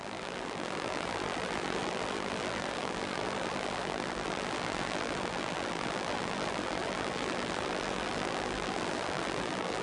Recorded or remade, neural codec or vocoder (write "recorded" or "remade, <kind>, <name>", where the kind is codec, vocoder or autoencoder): remade, vocoder, BigVGAN v2